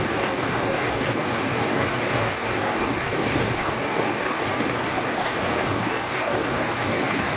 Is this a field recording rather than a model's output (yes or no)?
no